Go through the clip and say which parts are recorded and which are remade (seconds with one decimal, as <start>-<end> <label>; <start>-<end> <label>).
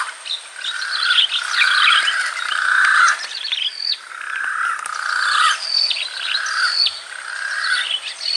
0.0-8.4 recorded